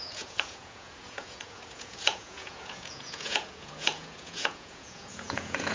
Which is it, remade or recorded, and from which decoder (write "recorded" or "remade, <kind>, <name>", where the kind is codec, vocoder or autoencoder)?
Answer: remade, vocoder, Vocos